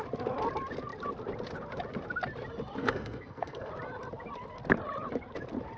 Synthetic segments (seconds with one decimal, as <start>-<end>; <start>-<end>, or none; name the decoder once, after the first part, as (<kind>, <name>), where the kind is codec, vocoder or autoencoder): 2.8-3.7 (codec, SNAC)